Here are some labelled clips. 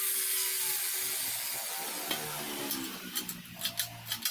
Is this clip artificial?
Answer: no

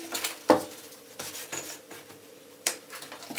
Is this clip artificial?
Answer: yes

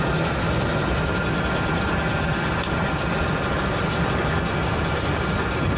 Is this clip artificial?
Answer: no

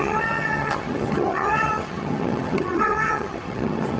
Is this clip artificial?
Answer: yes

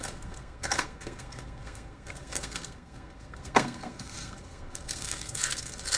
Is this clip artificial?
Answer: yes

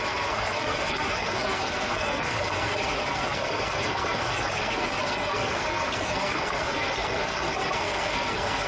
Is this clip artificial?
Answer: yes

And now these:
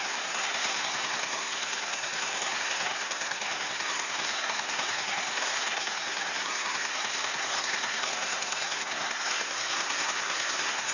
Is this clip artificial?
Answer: yes